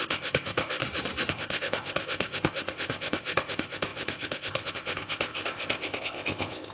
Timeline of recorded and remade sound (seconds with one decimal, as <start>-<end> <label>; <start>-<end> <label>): 0.0-0.8 remade; 0.8-1.3 recorded; 1.3-6.7 remade